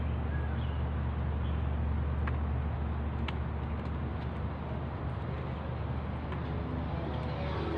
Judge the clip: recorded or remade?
recorded